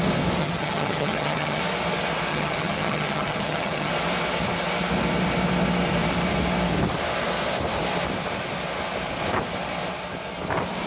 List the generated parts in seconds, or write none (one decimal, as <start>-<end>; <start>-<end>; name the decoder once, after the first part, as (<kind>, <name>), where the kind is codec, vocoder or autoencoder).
0.4-1.6 (vocoder, HiFi-GAN); 2.3-3.9